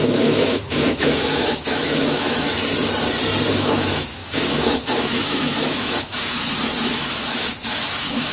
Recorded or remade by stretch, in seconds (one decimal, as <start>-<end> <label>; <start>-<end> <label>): 0.0-2.6 remade; 2.6-3.5 recorded; 3.5-8.3 remade